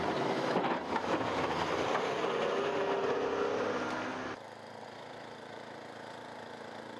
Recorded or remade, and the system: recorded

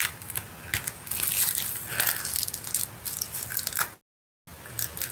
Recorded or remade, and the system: recorded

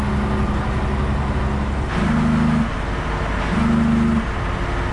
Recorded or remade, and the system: recorded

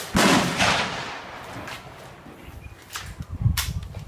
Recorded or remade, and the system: recorded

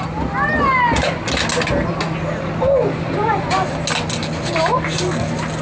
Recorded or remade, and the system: recorded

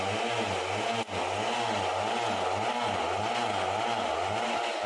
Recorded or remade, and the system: recorded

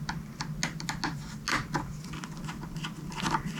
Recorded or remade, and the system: recorded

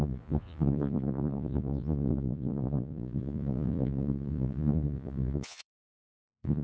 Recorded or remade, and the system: remade, vocoder, Vocos